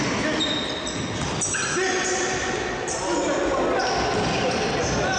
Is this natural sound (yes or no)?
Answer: yes